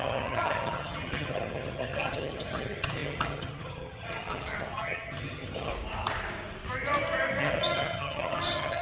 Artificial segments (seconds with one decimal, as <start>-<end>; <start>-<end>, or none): 0.0-5.7; 7.4-8.8